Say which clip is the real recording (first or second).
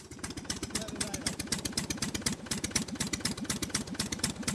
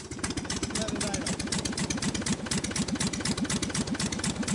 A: second